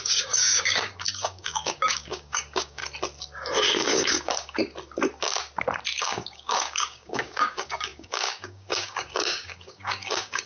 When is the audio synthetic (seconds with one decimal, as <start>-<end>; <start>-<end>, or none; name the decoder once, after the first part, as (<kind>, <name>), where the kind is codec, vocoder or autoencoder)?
0.0-2.8 (codec, DAC); 3.6-4.6; 6.0-10.5